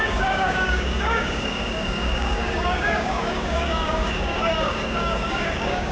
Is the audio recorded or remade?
remade